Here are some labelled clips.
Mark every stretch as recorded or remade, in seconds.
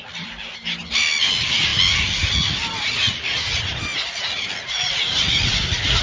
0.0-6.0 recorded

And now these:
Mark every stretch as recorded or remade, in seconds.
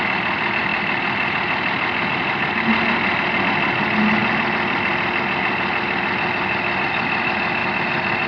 0.0-8.3 recorded